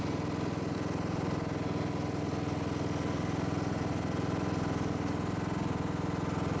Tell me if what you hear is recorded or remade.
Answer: recorded